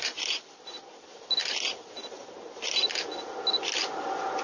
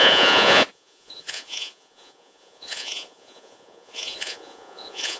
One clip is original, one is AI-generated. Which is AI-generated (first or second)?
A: second